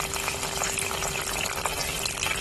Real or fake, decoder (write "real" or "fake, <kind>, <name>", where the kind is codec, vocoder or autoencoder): real